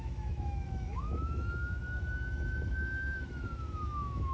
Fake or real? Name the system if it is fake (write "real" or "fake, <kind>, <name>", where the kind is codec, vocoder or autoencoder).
fake, autoencoder, DAC-VAE